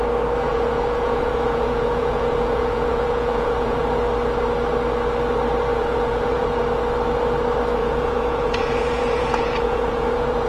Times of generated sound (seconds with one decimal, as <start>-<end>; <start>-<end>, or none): 0.5-3.8; 5.7-6.6; 7.8-10.5